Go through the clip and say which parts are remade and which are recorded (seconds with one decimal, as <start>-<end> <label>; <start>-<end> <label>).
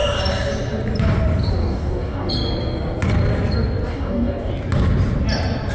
0.0-1.6 recorded; 1.6-2.3 remade; 2.3-3.9 recorded; 3.9-4.5 remade; 4.5-5.7 recorded